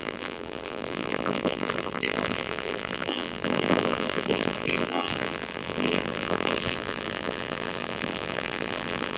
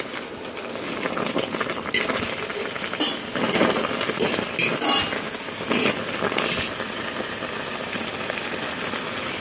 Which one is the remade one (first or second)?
first